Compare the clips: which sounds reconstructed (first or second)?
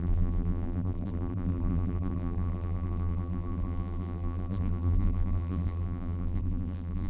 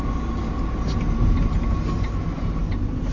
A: first